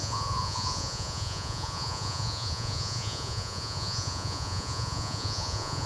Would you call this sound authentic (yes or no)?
no